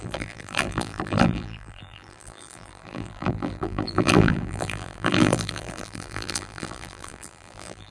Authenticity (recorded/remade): remade